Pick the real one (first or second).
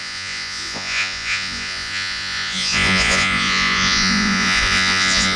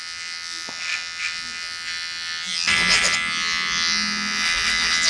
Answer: second